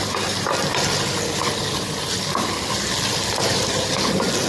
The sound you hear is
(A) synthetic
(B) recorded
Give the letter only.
B